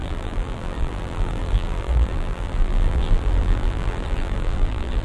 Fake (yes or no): yes